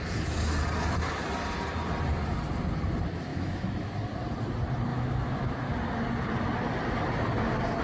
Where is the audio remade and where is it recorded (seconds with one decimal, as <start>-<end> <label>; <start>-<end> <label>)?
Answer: 0.0-3.3 recorded; 3.3-3.9 remade; 3.9-4.9 recorded; 4.9-5.7 remade; 5.7-7.8 recorded